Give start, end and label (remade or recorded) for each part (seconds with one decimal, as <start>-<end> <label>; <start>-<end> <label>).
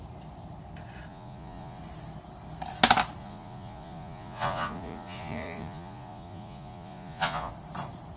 0.0-1.1 recorded; 1.1-1.8 remade; 1.8-3.2 recorded; 3.2-7.5 remade; 7.5-8.2 recorded